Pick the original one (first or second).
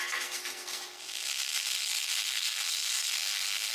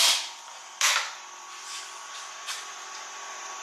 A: second